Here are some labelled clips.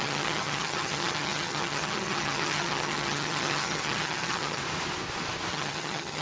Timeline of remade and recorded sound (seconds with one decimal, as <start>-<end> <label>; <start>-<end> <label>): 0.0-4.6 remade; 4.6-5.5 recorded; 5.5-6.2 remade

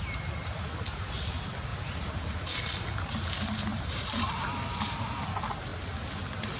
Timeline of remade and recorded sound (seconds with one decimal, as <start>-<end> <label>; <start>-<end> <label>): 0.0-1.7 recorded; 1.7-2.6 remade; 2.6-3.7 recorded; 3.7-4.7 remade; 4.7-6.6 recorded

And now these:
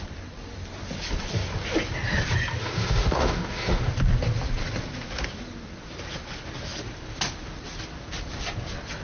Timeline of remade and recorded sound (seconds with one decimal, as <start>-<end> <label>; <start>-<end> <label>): 0.0-2.6 recorded; 2.6-3.9 remade; 3.9-9.0 recorded

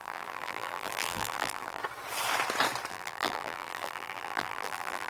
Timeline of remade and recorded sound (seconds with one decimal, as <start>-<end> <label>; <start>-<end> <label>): 0.0-1.8 remade; 1.8-2.9 recorded; 2.9-5.1 remade

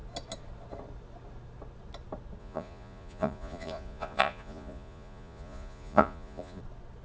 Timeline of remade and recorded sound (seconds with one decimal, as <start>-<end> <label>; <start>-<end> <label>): 0.0-2.4 recorded; 2.4-6.6 remade; 6.6-7.0 recorded

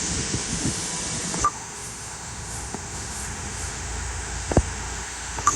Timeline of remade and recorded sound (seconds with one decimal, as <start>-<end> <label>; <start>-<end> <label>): 0.0-0.9 remade; 0.9-1.4 recorded; 1.4-5.6 remade